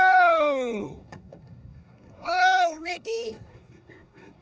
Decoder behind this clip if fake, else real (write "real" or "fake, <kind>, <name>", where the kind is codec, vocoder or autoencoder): fake, codec, SNAC